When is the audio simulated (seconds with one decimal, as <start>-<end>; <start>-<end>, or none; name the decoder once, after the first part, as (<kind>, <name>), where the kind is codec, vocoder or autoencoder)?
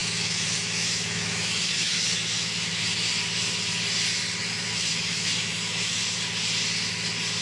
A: 0.0-3.1 (autoencoder, DAC-VAE); 4.4-6.0